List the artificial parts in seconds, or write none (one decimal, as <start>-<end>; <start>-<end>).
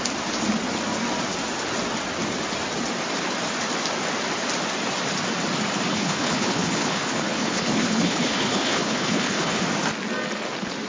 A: 5.9-9.6